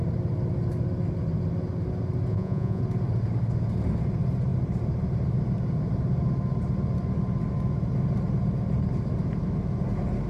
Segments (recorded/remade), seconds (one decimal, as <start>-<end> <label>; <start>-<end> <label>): 0.0-2.3 recorded; 2.3-2.8 remade; 2.8-10.3 recorded